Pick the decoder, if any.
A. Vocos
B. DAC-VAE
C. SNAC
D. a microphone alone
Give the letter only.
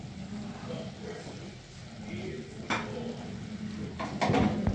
D